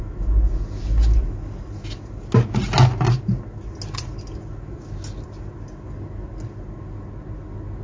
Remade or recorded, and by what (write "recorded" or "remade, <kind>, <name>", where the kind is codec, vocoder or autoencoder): recorded